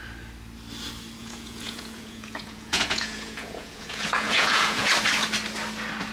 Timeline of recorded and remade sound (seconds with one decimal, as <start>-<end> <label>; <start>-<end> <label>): 0.0-1.2 recorded; 1.2-4.9 remade; 4.9-6.1 recorded